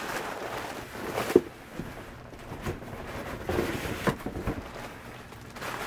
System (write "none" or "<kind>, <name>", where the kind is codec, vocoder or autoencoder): none